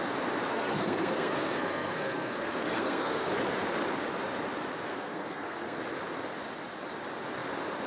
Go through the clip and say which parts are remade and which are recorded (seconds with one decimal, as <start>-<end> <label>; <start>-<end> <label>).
0.0-0.5 recorded; 0.5-3.3 remade; 3.3-4.9 recorded; 4.9-5.8 remade; 5.8-7.9 recorded